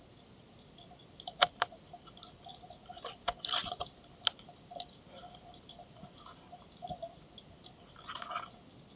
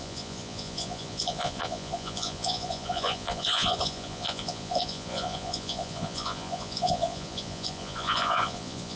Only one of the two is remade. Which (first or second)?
second